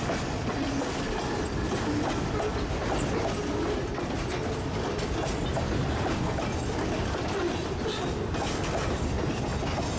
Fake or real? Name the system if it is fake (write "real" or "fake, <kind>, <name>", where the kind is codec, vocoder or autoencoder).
real